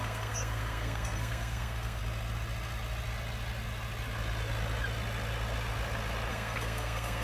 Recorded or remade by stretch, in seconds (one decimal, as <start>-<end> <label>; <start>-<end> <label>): 0.0-2.0 remade; 2.0-6.3 recorded; 6.3-7.2 remade